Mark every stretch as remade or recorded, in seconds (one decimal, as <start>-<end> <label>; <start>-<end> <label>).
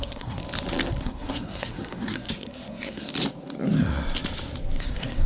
0.0-0.4 remade; 0.4-1.0 recorded; 1.0-3.1 remade; 3.1-4.8 recorded; 4.8-5.3 remade